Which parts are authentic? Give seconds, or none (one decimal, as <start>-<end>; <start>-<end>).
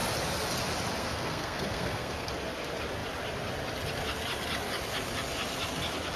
0.0-1.0; 2.3-6.2